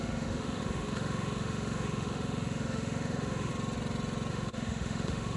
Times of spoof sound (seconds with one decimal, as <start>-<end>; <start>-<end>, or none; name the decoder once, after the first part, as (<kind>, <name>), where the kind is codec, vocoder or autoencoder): 0.0-3.5 (autoencoder, DAC-VAE); 4.3-5.4